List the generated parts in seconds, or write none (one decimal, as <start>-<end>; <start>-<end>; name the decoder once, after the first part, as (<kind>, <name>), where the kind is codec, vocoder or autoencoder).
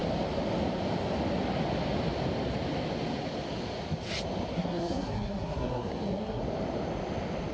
4.5-6.4 (codec, SNAC)